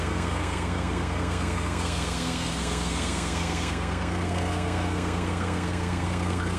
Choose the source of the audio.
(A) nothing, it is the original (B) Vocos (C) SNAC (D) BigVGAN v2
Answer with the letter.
C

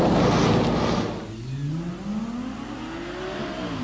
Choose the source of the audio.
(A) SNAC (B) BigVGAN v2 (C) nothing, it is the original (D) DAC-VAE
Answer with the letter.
C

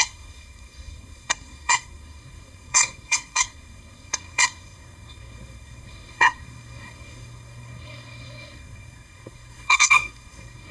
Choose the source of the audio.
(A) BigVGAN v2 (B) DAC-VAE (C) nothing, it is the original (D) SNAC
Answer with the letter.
D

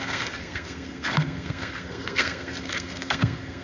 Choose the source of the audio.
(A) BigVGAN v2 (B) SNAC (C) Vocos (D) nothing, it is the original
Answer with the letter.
B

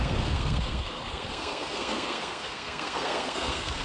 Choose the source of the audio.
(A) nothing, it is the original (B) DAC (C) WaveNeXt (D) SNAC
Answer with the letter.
D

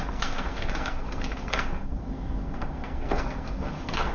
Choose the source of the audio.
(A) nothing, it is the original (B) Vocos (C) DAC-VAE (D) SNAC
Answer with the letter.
D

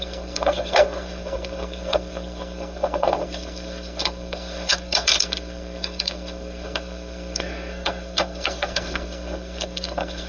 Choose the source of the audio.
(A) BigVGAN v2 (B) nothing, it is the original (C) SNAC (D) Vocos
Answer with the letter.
C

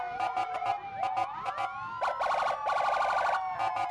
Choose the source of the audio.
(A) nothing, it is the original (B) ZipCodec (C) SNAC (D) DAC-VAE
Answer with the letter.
A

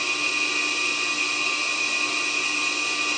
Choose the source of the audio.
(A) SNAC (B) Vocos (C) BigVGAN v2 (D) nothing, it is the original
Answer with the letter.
D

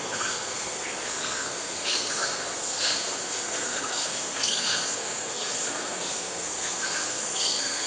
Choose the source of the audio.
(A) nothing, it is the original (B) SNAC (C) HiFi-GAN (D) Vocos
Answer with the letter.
B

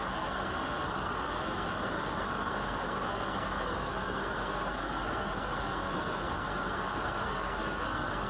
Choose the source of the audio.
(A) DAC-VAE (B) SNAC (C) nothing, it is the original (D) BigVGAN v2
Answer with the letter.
B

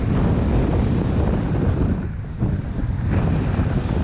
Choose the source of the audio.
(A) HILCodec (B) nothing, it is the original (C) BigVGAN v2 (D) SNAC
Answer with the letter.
B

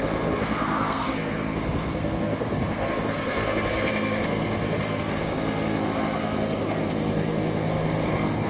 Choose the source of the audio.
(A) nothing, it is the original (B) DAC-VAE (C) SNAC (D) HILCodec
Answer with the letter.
C